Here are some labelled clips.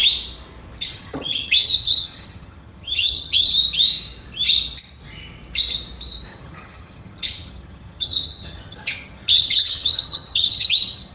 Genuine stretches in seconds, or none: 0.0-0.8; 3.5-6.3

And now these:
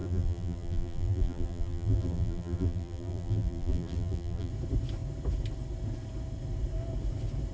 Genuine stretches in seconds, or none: 4.5-7.5

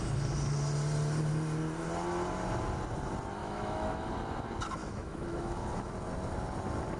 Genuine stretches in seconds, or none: 0.0-3.4; 4.1-4.8; 5.9-7.0

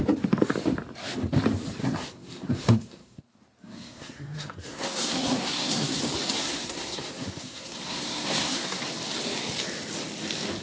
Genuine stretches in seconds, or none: 0.0-1.8; 3.2-3.6; 6.0-6.4; 8.8-10.6

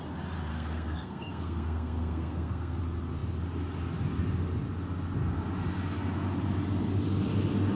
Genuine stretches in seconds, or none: 0.0-0.5; 2.8-7.8

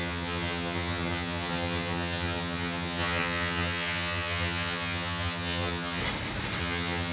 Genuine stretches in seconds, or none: 6.0-6.6